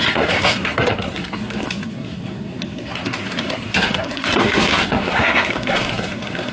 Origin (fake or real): fake